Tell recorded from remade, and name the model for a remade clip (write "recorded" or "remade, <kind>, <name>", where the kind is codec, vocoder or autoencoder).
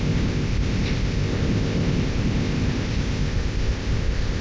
remade, codec, ZipCodec